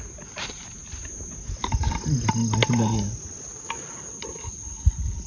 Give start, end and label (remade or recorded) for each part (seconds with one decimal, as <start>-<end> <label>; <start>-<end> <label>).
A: 0.0-5.3 recorded

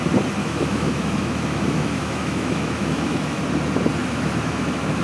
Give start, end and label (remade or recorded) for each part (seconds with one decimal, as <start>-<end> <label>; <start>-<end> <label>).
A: 0.0-0.4 recorded; 0.4-3.4 remade; 3.4-4.0 recorded; 4.0-5.0 remade

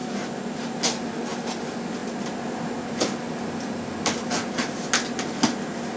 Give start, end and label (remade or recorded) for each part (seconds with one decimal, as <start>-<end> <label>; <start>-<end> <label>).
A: 0.0-6.0 recorded

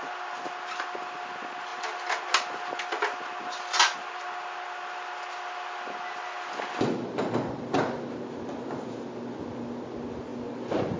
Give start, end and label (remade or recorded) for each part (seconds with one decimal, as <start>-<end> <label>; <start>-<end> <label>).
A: 0.0-11.0 recorded

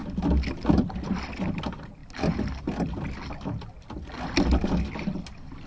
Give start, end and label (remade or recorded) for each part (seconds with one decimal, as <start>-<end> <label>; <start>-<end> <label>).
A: 0.0-5.7 recorded